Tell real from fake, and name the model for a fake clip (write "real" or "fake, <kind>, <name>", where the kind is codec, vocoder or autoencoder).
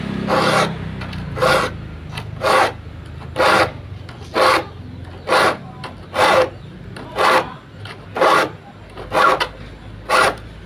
real